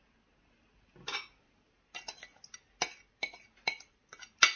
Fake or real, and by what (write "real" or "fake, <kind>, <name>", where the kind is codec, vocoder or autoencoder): real